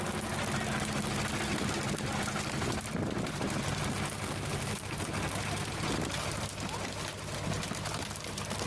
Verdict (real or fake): real